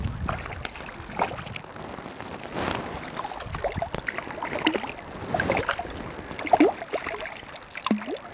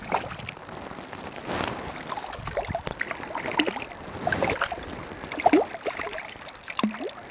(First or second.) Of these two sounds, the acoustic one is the first